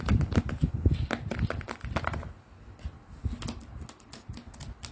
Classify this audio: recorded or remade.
recorded